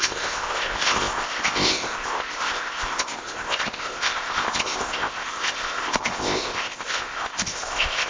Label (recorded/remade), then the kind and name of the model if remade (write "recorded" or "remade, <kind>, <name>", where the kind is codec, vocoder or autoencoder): remade, codec, ZipCodec